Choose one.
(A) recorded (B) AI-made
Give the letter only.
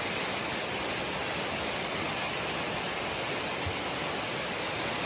A